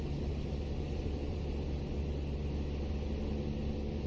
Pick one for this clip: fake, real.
real